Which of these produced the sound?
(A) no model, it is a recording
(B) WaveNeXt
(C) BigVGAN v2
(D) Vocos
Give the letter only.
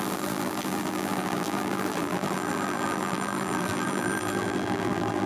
C